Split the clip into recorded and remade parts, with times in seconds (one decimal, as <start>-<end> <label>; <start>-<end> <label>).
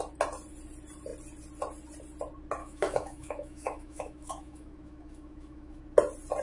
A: 0.0-2.6 recorded; 2.6-5.8 remade; 5.8-6.4 recorded